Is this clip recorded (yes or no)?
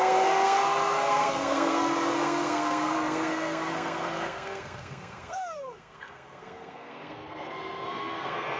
no